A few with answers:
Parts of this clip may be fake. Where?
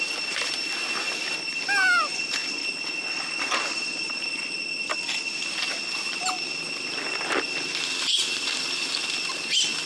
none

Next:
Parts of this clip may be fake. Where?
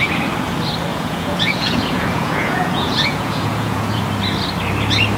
0.9-4.0 (vocoder, Vocos)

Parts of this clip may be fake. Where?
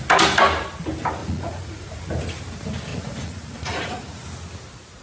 1.2-2.0 (vocoder, Vocos); 2.9-4.2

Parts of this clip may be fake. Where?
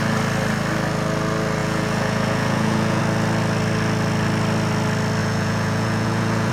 1.6-3.0 (vocoder, Vocos); 5.2-6.5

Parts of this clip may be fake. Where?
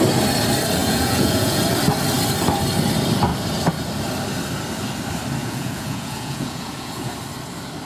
0.8-1.6 (vocoder, Vocos); 5.4-7.1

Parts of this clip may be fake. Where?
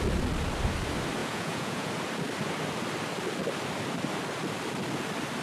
1.2-1.9 (vocoder, Vocos)